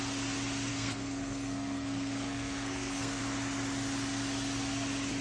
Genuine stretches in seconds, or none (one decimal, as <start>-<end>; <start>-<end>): 0.0-0.7; 3.2-5.2